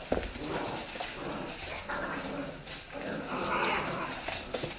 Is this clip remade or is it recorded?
recorded